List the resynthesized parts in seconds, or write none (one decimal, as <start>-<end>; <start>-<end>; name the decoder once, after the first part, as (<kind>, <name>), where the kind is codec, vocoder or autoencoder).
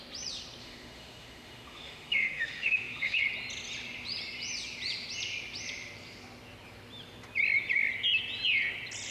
0.6-3.2 (autoencoder, DAC-VAE)